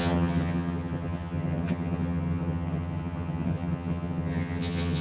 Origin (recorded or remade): remade